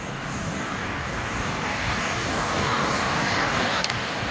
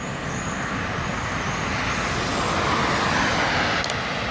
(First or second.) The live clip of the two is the second